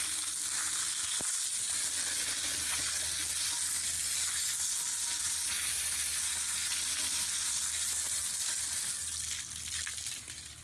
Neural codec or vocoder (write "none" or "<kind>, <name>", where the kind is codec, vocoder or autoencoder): none